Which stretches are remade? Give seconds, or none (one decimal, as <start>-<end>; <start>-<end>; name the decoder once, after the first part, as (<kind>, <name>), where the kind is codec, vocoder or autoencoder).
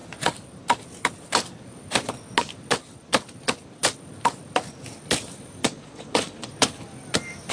5.6-6.5 (vocoder, Vocos)